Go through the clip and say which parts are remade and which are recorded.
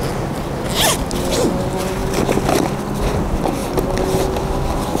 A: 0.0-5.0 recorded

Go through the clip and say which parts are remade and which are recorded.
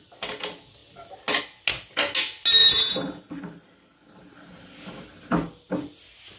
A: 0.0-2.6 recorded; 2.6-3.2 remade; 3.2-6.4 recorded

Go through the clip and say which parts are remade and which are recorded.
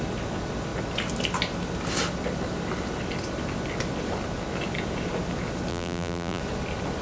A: 0.0-5.7 recorded; 5.7-6.4 remade; 6.4-7.0 recorded